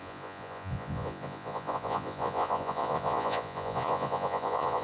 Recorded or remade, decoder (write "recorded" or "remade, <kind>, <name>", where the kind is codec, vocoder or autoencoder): remade, vocoder, Vocos